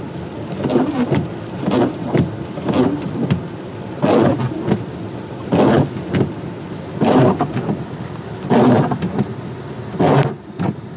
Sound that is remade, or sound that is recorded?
recorded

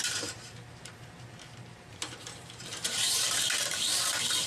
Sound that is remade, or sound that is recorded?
remade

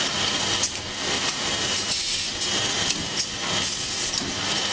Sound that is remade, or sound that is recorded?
recorded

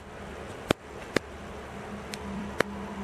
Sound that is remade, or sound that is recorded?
remade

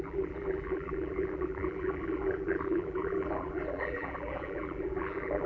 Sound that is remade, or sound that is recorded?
remade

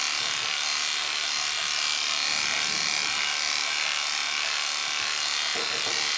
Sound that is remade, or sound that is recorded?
recorded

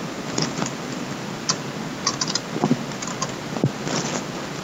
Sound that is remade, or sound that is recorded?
recorded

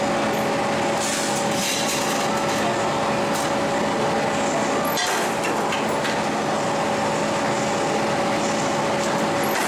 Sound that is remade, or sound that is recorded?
recorded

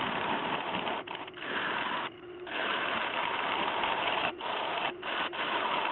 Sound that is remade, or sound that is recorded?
remade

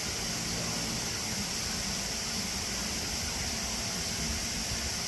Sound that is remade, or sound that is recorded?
recorded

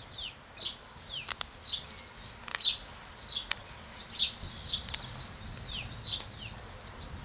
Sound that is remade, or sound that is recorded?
recorded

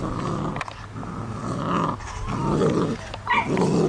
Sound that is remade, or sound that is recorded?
recorded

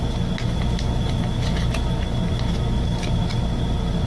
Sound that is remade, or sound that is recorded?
recorded